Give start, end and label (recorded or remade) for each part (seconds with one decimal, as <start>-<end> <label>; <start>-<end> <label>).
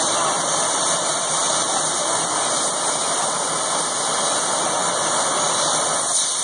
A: 0.0-6.4 recorded